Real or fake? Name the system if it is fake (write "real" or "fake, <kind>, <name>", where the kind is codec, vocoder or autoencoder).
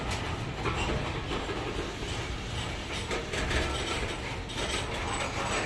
real